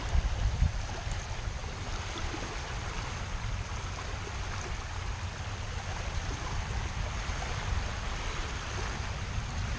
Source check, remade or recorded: recorded